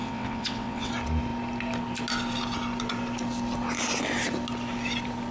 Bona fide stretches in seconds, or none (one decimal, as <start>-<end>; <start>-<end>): 0.9-5.3